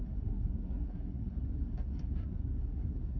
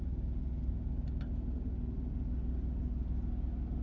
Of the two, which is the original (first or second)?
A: second